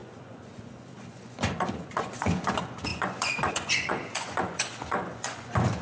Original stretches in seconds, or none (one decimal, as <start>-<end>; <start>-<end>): none